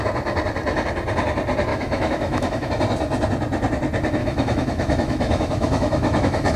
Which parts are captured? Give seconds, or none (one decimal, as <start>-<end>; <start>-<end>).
0.0-1.7; 2.7-4.2